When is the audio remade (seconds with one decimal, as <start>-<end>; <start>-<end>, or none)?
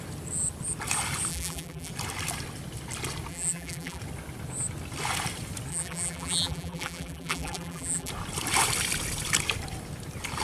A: 1.3-1.9; 3.3-4.0; 5.7-8.1